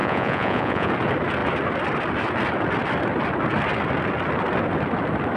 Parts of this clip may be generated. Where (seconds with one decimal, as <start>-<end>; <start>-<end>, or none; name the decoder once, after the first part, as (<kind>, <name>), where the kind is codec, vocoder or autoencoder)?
0.0-0.9 (vocoder, Vocos)